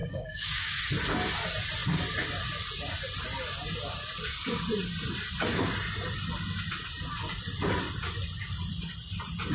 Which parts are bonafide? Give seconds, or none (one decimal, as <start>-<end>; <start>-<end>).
0.8-9.5